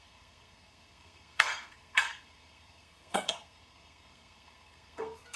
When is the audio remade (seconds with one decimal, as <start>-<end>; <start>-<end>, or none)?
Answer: 0.0-5.4